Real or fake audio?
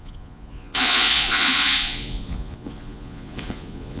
fake